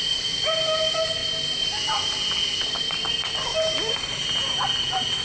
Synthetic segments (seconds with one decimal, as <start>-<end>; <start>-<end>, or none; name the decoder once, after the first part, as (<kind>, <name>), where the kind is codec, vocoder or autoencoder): none